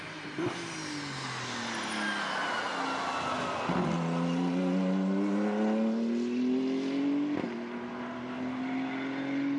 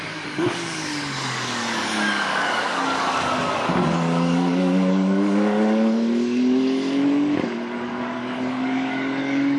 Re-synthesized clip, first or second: second